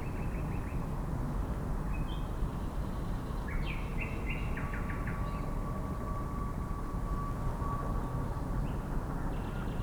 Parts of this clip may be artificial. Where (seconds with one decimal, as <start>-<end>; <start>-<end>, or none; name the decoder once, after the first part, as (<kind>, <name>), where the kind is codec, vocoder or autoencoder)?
2.5-3.5 (vocoder, BigVGAN v2)

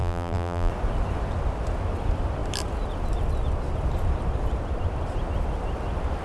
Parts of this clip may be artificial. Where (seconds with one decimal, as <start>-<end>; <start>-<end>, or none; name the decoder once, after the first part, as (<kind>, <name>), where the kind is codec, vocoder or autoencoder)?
0.0-0.7 (vocoder, BigVGAN v2)

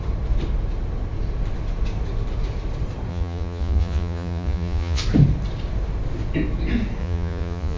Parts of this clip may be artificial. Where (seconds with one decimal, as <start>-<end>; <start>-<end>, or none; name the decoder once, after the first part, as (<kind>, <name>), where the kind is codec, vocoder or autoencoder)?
3.1-5.0 (vocoder, Vocos); 7.0-7.8

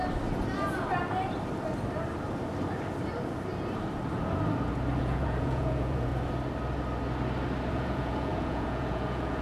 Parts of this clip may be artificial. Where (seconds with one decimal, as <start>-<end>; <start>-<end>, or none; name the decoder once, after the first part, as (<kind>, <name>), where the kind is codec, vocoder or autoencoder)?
5.0-6.1 (vocoder, Vocos); 7.7-9.4

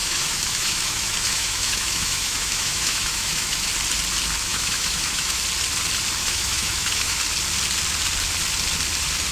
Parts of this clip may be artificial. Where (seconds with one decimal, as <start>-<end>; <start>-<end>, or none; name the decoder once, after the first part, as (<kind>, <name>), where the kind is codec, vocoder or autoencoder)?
0.0-3.7 (autoencoder, DAC-VAE); 4.5-5.4; 6.2-7.2

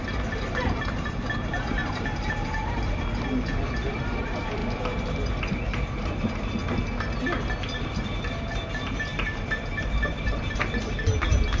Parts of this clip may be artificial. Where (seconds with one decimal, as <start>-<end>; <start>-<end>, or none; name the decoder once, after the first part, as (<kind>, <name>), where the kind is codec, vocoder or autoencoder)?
0.0-4.6 (vocoder, BigVGAN v2); 5.4-6.6; 7.8-11.6